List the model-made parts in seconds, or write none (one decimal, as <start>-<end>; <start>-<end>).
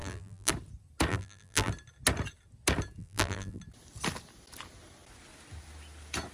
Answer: 0.0-0.5; 1.1-1.7; 3.0-3.6